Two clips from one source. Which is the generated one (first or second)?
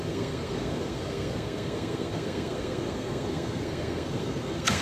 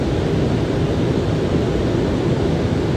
first